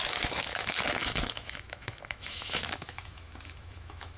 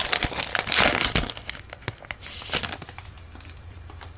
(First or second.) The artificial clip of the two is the first